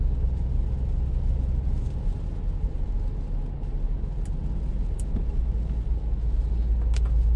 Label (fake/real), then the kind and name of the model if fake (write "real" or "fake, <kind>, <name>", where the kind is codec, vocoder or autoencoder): real